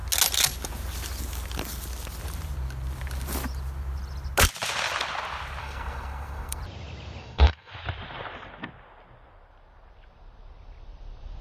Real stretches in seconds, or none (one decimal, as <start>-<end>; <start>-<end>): 0.0-5.6; 6.6-7.2; 7.7-11.4